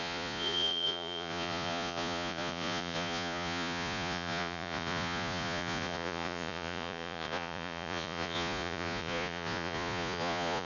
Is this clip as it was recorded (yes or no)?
no